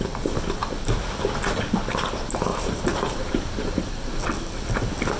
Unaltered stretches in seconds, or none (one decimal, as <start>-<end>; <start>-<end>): 0.0-2.5; 4.1-5.2